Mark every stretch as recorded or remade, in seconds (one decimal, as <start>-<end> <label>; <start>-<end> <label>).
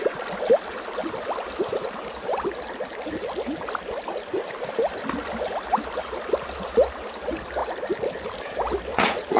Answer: 0.0-8.9 recorded; 8.9-9.4 remade